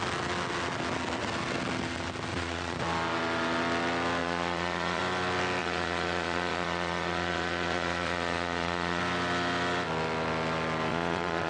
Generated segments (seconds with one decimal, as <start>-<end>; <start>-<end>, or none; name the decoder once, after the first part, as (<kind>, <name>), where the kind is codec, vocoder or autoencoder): 2.3-2.8 (vocoder, Vocos); 4.2-5.0; 5.6-9.0; 10.9-11.5